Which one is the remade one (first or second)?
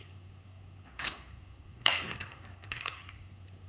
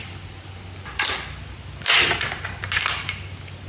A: first